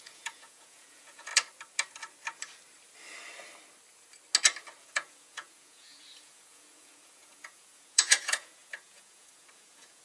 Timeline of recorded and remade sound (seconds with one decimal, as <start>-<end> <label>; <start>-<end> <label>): 0.0-1.3 remade; 1.3-4.8 recorded; 4.8-10.0 remade